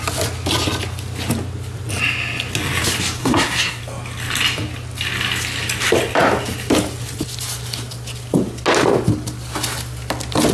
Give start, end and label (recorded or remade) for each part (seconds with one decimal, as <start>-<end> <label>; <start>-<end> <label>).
0.0-3.2 recorded; 3.2-3.8 remade; 3.8-10.5 recorded